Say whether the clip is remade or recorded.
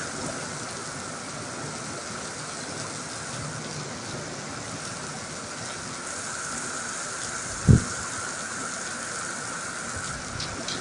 recorded